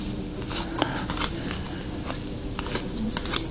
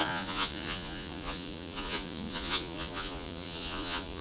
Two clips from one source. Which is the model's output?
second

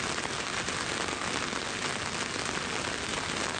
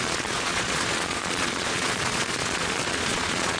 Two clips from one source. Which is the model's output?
second